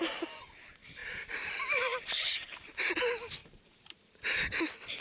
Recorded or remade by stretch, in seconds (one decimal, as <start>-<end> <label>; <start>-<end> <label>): 0.0-1.0 recorded; 1.0-2.9 remade; 2.9-3.4 recorded; 3.4-4.2 remade; 4.2-5.0 recorded